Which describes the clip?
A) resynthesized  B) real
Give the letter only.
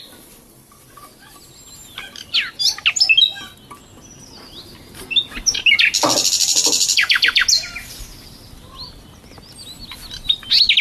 B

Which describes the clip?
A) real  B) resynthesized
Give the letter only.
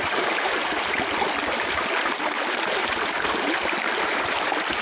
B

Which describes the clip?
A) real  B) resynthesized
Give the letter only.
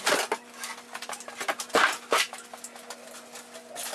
A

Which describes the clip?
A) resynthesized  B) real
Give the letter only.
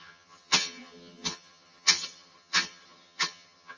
A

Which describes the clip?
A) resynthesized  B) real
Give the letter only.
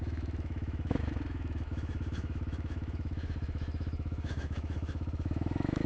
A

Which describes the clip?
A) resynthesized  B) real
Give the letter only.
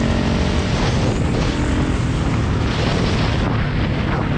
B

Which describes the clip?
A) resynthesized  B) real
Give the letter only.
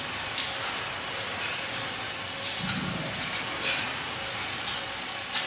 B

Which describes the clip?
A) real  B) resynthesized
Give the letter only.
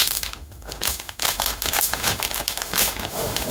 B